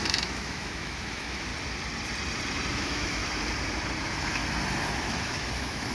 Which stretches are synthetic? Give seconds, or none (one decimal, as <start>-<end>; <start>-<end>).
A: 0.0-1.5; 2.7-3.2; 4.0-4.4; 5.1-5.9